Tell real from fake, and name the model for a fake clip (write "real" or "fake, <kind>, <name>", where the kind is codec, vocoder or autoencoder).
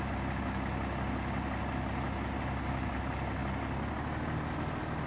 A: real